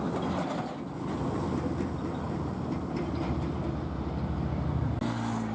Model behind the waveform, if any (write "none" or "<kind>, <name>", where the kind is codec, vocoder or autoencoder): none